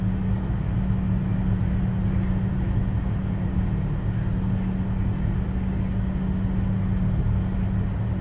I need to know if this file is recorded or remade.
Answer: recorded